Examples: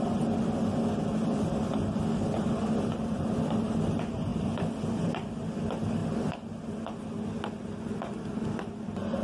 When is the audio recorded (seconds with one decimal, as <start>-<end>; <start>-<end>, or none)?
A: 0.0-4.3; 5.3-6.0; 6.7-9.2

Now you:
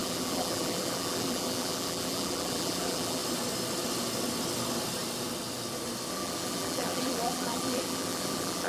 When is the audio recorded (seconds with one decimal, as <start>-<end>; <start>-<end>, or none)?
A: 3.2-6.1

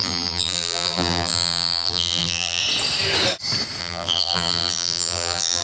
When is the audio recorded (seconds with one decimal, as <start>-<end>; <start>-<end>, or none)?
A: 2.6-3.8

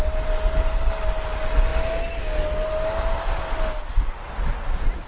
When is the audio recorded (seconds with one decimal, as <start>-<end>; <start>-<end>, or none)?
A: 0.0-5.1

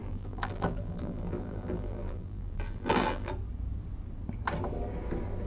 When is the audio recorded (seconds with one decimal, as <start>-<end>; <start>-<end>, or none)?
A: 3.3-5.5

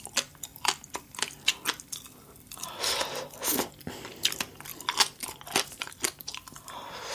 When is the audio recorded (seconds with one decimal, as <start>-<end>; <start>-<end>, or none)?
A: 0.0-7.1

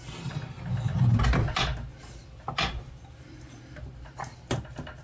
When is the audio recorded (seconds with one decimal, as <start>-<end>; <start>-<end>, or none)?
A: 0.0-1.9; 2.5-5.0